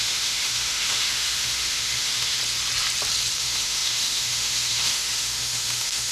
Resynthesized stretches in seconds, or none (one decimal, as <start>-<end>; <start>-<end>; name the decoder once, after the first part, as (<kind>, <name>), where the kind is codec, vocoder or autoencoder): 0.0-2.4 (autoencoder, DAC-VAE); 3.4-6.1